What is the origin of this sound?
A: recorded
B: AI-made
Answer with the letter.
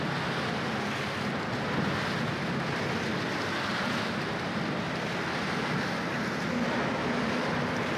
A